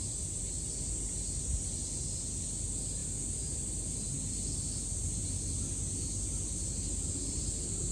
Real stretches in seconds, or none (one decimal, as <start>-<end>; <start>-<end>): 0.0-7.9